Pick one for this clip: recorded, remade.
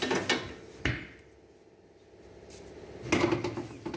recorded